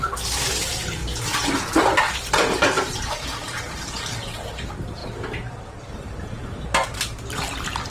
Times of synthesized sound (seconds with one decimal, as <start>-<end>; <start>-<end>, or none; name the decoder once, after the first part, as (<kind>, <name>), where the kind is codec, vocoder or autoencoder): 0.0-1.0 (vocoder, BigVGAN v2); 2.1-7.9